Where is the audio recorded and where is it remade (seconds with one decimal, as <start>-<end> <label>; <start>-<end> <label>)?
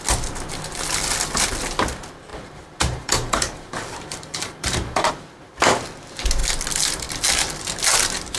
0.0-2.3 recorded; 2.3-5.1 remade; 5.1-8.4 recorded